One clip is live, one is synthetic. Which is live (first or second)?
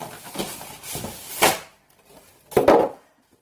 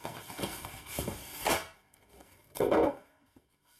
first